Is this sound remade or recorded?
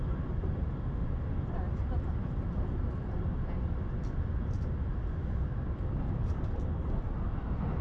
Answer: recorded